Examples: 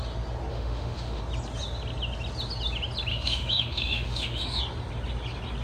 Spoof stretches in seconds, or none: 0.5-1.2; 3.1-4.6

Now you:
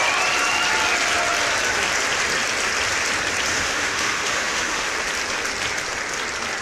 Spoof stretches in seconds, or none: 3.5-4.9

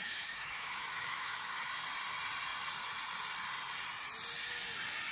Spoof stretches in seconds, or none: 0.0-1.6

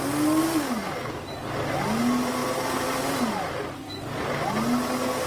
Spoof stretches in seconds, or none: none

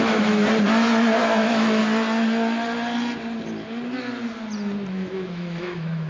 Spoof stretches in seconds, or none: 0.0-0.5; 1.2-1.8; 4.9-6.1

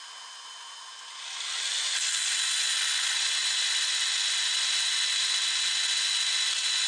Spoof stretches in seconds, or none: none